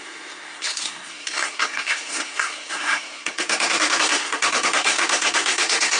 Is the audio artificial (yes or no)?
yes